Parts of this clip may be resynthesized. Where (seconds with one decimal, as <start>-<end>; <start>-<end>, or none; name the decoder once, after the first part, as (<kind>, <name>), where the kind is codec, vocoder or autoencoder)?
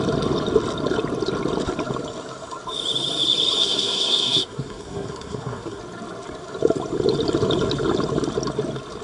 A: 3.6-5.8 (codec, SNAC)